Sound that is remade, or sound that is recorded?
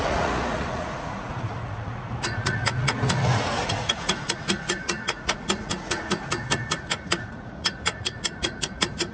remade